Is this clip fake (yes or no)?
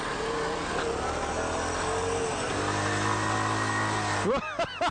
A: no